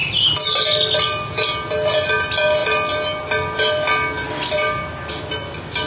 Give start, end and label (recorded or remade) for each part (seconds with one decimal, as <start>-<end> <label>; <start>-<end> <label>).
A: 0.0-5.9 recorded